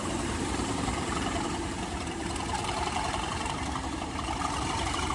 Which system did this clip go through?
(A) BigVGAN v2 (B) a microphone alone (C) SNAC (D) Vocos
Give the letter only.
A